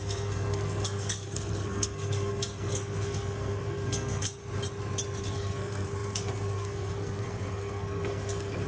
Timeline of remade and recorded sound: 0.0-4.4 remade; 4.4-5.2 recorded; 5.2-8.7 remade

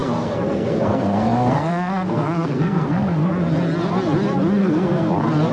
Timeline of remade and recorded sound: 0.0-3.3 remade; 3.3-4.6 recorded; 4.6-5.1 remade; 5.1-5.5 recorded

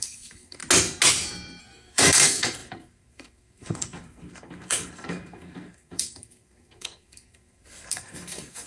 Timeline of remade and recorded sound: 0.0-0.6 remade; 0.6-1.6 recorded; 1.6-8.7 remade

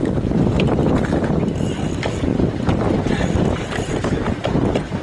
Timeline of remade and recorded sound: 0.0-5.0 recorded

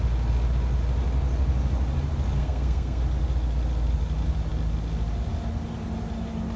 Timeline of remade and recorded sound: 0.0-2.4 recorded; 2.4-3.0 remade; 3.0-6.6 recorded

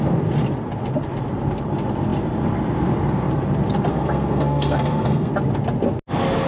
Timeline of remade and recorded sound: 0.0-3.9 recorded; 3.9-5.3 remade; 5.3-6.5 recorded

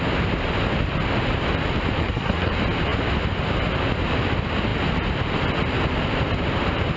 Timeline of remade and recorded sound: 0.0-2.0 recorded; 2.0-2.5 remade; 2.5-7.0 recorded